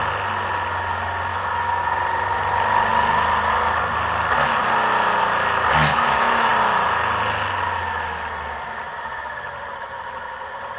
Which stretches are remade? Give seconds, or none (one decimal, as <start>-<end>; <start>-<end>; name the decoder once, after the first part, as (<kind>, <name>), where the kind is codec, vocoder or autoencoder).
1.3-1.8 (autoencoder, DAC-VAE); 5.9-6.5